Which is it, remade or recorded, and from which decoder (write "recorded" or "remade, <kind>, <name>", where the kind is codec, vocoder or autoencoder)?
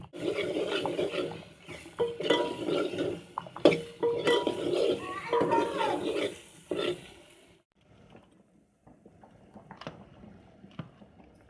recorded